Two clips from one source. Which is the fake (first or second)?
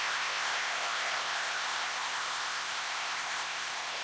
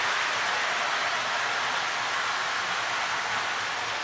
first